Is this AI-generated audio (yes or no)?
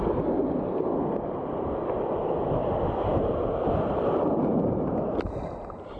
no